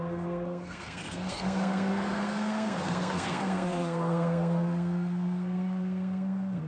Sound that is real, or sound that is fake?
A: fake